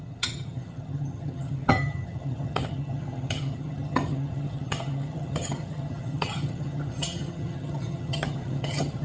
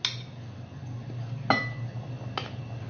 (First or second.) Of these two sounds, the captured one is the second